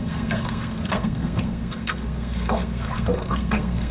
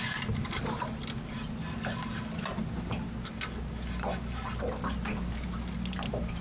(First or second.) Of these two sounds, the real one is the second